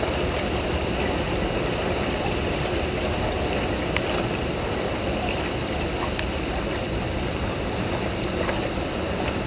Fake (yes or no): no